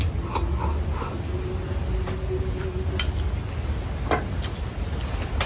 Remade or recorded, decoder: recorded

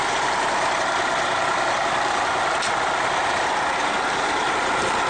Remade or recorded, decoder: recorded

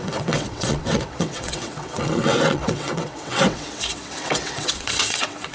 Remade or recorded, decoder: remade, vocoder, WaveNeXt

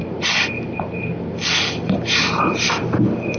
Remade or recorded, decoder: recorded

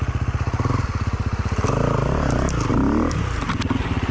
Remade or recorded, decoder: recorded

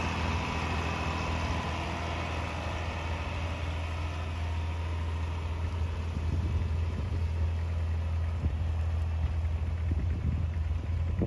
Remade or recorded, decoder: recorded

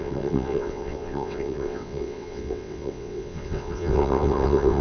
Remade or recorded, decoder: remade, vocoder, WaveNeXt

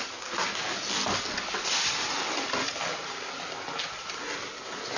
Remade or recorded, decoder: recorded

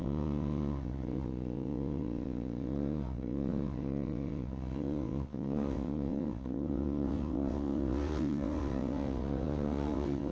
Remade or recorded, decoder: remade, vocoder, WaveNeXt